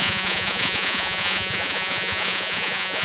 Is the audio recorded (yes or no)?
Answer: no